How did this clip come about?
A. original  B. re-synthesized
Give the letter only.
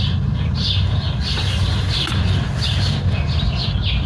A